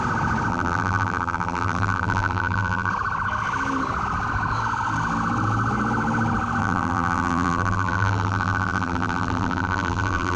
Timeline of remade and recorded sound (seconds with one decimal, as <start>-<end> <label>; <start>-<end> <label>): 0.0-0.5 recorded; 0.5-2.9 remade; 2.9-6.6 recorded; 6.6-10.4 remade